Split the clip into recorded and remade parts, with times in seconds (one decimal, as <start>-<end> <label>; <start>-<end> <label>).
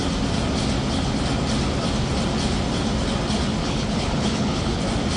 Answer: 0.0-3.6 recorded; 3.6-4.8 remade; 4.8-5.2 recorded